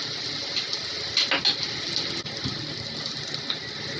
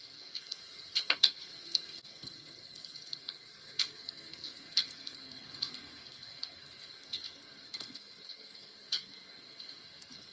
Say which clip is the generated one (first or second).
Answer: second